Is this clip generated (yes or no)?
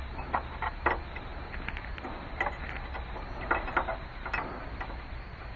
no